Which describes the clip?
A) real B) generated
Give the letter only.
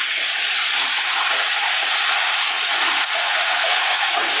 B